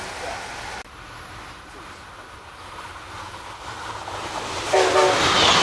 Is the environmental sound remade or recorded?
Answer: recorded